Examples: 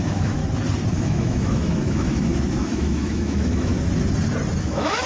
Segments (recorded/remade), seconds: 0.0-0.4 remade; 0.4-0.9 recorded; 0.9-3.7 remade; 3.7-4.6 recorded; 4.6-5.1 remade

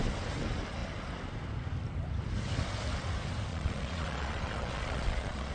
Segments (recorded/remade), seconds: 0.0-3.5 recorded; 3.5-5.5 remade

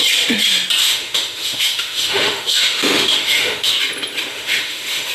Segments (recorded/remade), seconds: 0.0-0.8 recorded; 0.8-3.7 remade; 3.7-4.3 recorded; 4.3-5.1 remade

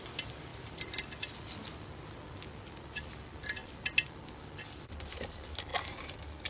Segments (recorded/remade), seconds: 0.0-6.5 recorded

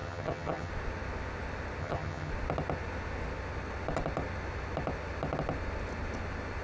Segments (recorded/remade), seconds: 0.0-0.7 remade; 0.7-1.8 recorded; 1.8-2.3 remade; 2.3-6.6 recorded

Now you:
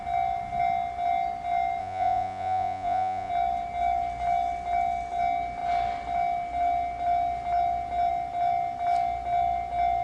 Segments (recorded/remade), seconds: 0.0-1.8 recorded; 1.8-3.3 remade; 3.3-10.0 recorded

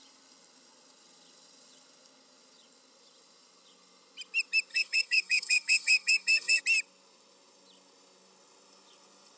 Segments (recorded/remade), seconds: 0.0-4.7 recorded; 4.7-6.6 remade; 6.6-9.4 recorded

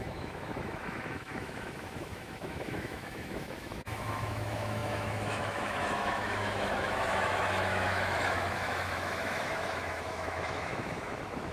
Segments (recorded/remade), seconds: 0.0-11.5 remade